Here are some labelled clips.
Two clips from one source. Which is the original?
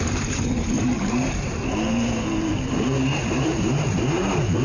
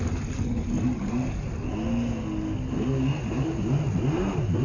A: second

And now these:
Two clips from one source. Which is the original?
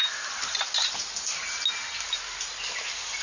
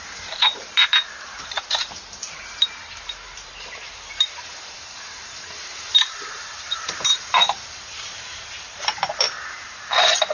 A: first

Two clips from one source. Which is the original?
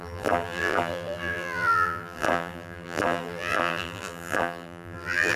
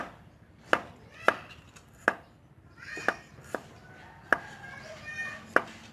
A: second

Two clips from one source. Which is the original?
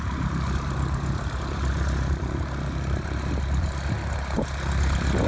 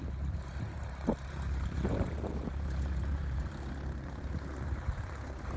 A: first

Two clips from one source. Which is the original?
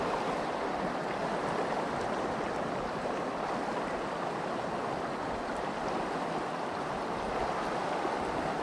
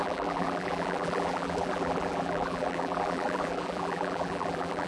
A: first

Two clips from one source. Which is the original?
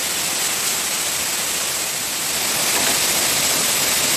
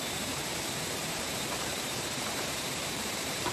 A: first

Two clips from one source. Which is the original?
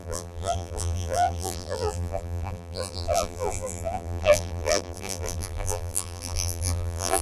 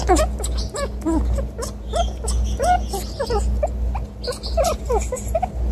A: second